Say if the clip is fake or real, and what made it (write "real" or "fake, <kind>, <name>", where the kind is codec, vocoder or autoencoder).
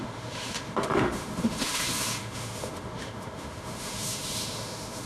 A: fake, autoencoder, DAC-VAE